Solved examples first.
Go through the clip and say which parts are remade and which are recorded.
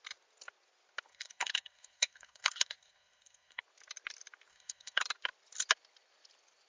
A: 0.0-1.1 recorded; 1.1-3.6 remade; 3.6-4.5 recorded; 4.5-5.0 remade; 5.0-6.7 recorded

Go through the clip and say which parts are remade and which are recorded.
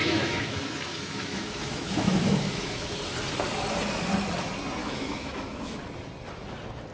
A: 0.0-3.0 remade; 3.0-4.8 recorded; 4.8-5.8 remade; 5.8-6.9 recorded